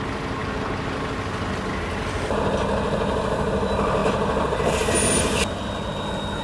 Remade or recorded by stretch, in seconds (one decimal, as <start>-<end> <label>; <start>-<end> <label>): 0.0-6.4 recorded